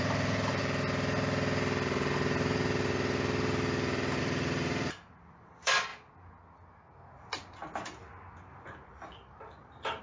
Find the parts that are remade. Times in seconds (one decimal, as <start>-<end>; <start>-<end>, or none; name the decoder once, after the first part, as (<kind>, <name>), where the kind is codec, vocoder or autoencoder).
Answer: 0.0-0.6 (vocoder, BigVGAN v2); 4.2-5.9; 8.5-10.0